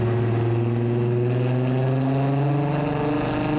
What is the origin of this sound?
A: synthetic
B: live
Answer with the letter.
B